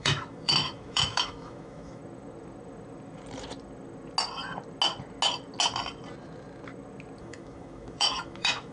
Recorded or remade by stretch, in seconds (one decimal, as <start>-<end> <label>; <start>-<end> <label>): 0.0-2.0 remade; 2.0-7.2 recorded; 7.2-8.7 remade